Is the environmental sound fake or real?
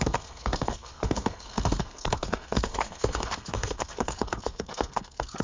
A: fake